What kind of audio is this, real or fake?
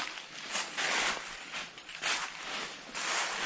real